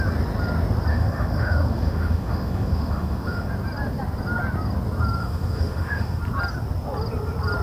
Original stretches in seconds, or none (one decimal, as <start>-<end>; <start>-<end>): 0.0-0.9; 3.5-5.2; 6.2-7.6